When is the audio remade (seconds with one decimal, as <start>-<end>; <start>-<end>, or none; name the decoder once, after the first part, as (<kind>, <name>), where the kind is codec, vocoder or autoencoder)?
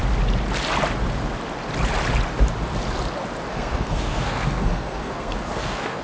3.5-6.0 (codec, SNAC)